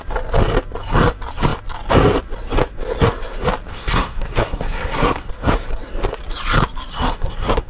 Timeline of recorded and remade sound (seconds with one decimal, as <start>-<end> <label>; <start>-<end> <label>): 0.0-3.7 recorded; 3.7-5.3 remade; 5.3-6.9 recorded; 6.9-7.7 remade

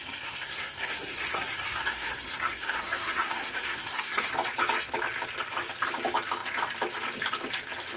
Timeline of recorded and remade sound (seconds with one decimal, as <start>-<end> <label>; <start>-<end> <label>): 0.0-4.3 remade; 4.3-8.0 recorded